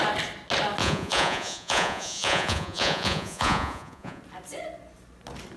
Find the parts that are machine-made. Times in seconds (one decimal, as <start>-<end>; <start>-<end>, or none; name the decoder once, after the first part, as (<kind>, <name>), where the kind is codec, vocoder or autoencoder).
0.8-4.2 (vocoder, Vocos)